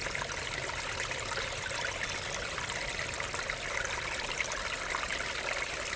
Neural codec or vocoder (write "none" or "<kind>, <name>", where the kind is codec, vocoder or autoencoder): none